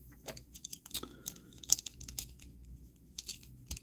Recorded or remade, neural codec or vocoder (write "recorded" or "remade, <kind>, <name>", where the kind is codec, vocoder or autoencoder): remade, autoencoder, DAC-VAE